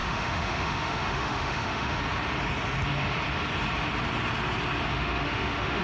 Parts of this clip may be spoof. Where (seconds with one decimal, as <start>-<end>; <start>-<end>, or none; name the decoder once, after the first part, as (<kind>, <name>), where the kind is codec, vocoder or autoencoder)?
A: 0.0-2.0 (autoencoder, DAC-VAE); 4.9-5.8